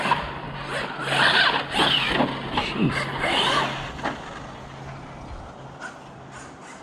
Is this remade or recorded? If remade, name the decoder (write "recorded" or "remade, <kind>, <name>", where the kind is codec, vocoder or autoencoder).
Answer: recorded